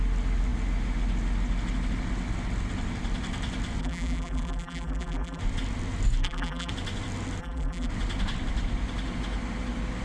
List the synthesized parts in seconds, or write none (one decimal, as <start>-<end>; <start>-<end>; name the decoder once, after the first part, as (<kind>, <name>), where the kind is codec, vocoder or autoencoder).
3.8-5.4 (vocoder, BigVGAN v2); 6.2-6.7; 7.4-7.9